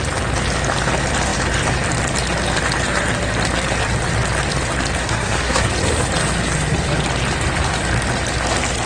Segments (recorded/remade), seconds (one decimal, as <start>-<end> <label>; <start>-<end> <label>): 0.0-5.0 recorded; 5.0-5.7 remade; 5.7-8.9 recorded